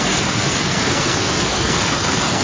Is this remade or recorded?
remade